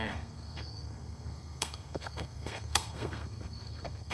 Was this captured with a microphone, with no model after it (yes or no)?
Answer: no